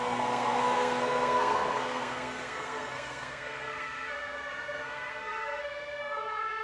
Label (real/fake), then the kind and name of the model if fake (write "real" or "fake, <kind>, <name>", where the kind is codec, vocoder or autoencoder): fake, codec, SNAC